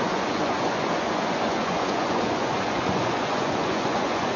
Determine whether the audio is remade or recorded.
remade